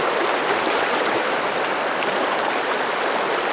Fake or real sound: fake